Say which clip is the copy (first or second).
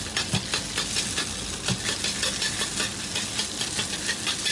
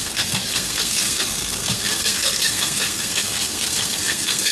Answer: second